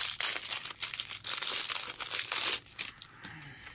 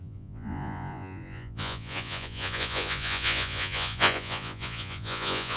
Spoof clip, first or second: second